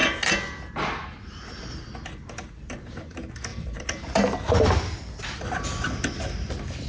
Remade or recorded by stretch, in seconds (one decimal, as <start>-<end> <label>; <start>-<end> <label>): 0.0-6.9 recorded